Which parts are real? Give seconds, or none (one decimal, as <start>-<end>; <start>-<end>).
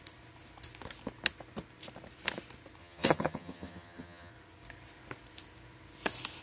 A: 0.0-2.8; 4.3-6.4